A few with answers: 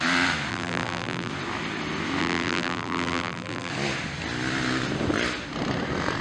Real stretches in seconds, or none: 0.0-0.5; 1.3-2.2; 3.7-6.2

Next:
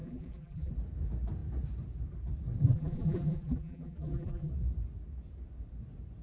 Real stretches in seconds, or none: 0.7-2.6; 4.5-6.2